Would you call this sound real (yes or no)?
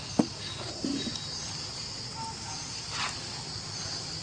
yes